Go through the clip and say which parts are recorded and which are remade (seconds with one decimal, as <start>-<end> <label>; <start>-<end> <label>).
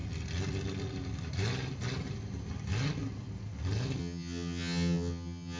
0.0-4.0 recorded; 4.0-5.6 remade